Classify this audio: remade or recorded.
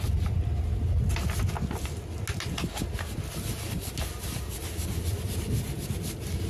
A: recorded